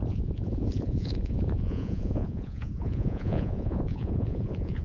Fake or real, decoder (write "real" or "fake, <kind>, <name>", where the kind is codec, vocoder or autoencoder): fake, vocoder, Vocos